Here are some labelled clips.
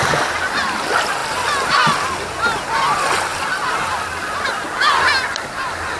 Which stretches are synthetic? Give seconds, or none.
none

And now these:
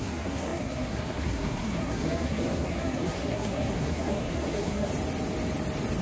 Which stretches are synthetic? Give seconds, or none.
0.0-4.9 (codec, SNAC)

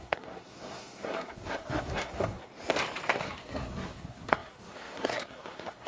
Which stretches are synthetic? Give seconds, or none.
0.0-2.5 (codec, SNAC); 3.2-5.9

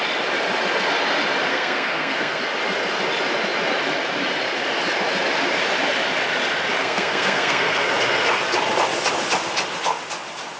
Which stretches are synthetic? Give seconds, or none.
1.5-2.4 (codec, SNAC); 6.8-7.9

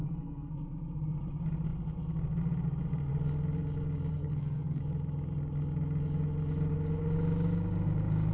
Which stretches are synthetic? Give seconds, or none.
0.0-0.5 (codec, SNAC); 4.1-4.8

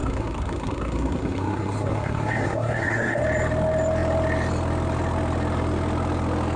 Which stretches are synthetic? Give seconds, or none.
0.0-3.2 (codec, SNAC)

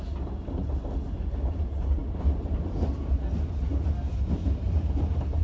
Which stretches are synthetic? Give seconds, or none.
none

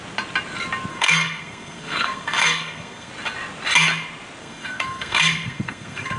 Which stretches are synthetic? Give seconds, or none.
0.9-3.1 (codec, SNAC); 4.4-6.2